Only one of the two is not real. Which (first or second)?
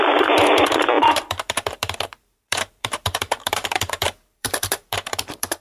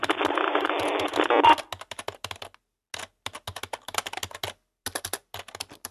first